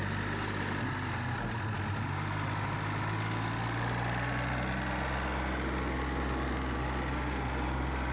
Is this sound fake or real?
real